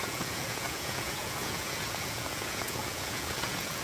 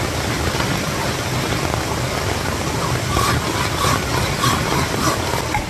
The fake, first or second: first